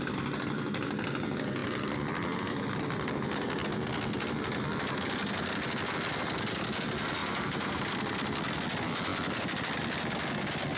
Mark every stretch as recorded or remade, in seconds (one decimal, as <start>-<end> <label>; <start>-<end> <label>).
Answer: 0.0-7.2 recorded; 7.2-7.9 remade; 7.9-10.8 recorded